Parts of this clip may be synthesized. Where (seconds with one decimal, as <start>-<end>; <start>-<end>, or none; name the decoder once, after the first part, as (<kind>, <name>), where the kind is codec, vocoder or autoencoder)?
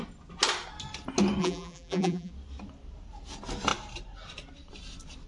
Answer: 1.4-2.3 (vocoder, BigVGAN v2)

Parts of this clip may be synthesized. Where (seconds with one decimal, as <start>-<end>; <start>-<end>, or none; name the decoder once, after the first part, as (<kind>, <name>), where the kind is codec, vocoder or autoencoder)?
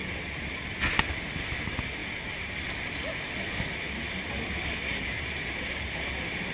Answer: 0.0-0.8 (vocoder, BigVGAN v2); 2.0-3.4; 4.9-5.5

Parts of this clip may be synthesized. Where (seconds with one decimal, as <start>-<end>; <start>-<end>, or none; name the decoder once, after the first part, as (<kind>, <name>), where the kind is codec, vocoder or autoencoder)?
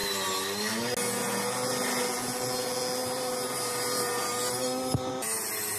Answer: 3.0-5.8 (vocoder, BigVGAN v2)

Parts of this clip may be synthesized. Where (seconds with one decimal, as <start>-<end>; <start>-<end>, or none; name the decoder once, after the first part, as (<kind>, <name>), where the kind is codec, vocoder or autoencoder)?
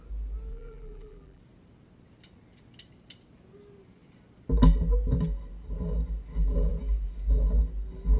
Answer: 0.5-1.4 (vocoder, BigVGAN v2)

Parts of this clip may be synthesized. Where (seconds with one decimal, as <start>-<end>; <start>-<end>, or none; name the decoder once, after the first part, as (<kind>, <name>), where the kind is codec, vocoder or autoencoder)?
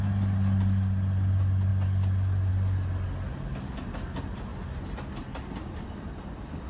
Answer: 1.7-2.5 (vocoder, BigVGAN v2)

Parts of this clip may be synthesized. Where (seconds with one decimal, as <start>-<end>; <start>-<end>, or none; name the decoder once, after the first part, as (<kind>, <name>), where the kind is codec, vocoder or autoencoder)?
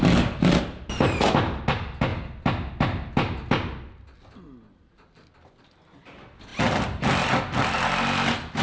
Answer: none